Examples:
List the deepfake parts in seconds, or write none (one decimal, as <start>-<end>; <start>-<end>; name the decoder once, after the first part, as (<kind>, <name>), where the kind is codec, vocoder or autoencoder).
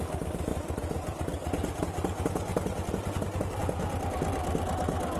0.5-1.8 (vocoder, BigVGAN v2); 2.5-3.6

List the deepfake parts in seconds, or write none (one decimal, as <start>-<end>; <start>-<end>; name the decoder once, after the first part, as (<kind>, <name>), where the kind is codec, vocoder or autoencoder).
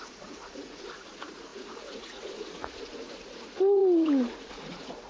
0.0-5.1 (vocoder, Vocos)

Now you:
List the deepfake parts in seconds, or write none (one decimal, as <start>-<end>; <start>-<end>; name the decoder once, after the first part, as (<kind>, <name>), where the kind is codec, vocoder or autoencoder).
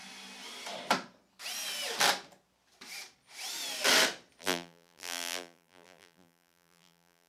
4.4-7.3 (vocoder, BigVGAN v2)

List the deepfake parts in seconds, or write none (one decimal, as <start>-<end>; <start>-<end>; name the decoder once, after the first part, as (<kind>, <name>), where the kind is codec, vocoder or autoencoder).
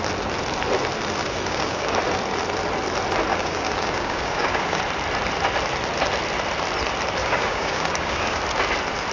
1.2-2.0 (codec, DAC); 3.3-4.8; 7.2-8.4